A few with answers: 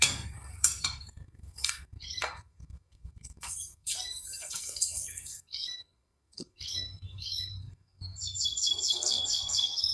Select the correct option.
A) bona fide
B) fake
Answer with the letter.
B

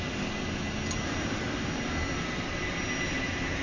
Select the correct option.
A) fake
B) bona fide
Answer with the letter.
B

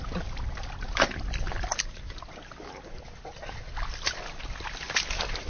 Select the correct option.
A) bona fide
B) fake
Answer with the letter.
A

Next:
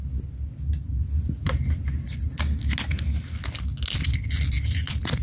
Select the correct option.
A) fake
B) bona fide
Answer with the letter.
B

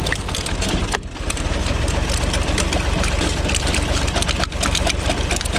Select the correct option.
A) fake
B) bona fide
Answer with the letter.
B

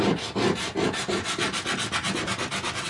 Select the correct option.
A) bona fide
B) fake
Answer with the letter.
A